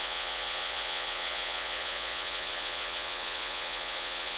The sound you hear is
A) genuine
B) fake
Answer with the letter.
B